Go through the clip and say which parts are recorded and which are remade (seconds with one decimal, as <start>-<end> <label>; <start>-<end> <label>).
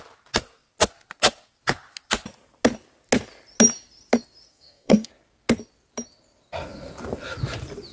0.0-4.5 recorded; 4.5-5.1 remade; 5.1-7.9 recorded